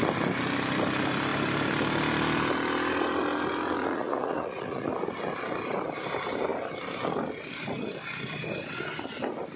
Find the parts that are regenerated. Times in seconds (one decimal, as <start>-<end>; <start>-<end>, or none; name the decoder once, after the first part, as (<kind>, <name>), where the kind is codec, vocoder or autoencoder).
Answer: 3.8-4.9 (vocoder, Vocos)